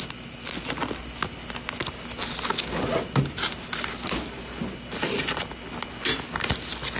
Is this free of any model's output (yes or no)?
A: yes